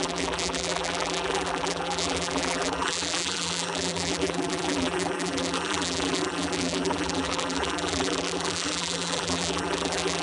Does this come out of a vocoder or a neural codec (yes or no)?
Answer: yes